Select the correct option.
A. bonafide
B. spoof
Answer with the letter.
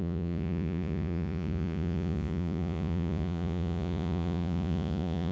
B